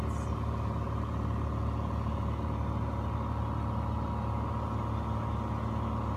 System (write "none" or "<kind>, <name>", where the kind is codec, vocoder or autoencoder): none